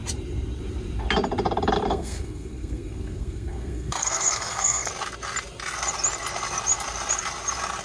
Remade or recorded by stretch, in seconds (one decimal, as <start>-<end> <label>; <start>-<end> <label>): 0.0-1.9 recorded; 1.9-4.9 remade; 4.9-7.8 recorded